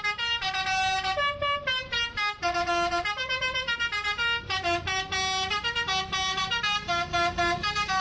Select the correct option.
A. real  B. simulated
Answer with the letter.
A